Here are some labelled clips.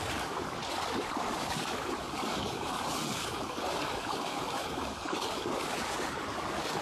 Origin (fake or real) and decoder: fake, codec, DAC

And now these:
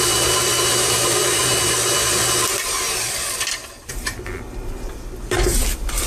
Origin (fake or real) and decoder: fake, vocoder, BigVGAN v2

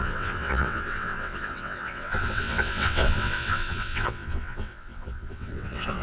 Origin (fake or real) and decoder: fake, vocoder, WaveNeXt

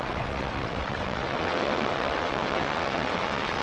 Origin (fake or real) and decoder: fake, vocoder, WaveNeXt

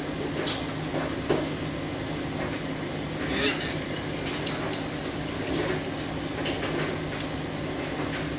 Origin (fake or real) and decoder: real